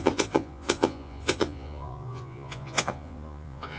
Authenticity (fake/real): fake